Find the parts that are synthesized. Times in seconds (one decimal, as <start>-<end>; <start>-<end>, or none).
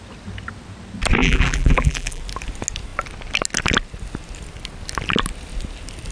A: 1.2-2.2